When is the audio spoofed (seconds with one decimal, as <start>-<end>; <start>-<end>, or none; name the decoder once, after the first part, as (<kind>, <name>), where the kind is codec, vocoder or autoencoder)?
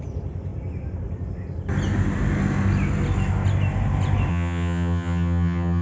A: 4.3-5.8 (vocoder, HiFi-GAN)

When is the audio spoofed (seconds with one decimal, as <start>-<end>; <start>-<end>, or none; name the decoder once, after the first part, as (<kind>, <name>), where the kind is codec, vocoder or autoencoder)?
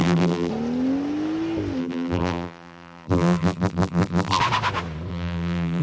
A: 0.0-0.5 (vocoder, BigVGAN v2); 1.8-4.4; 5.1-5.8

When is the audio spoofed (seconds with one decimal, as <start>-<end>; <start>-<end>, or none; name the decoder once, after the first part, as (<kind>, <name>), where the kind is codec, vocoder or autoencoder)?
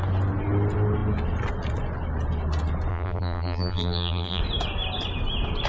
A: 2.9-4.4 (vocoder, BigVGAN v2)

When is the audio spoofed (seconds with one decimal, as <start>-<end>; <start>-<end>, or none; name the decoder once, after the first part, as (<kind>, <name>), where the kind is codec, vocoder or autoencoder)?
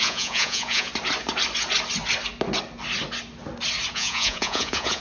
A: 0.0-0.9 (vocoder, Vocos); 3.9-5.0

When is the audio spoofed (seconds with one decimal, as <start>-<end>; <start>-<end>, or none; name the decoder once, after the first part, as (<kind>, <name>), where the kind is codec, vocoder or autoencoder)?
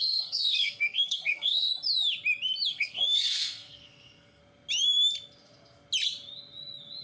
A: 0.0-1.7 (codec, SNAC); 2.7-4.4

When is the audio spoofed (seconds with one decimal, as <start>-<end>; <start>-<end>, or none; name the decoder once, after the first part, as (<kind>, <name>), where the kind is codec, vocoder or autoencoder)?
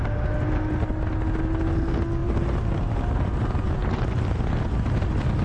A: 2.2-4.0 (vocoder, BigVGAN v2)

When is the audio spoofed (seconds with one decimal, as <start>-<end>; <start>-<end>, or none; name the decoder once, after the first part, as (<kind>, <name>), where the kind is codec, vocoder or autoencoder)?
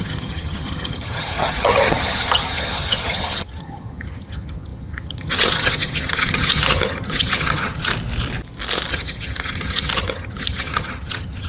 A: 0.0-7.9 (vocoder, HiFi-GAN); 8.9-11.5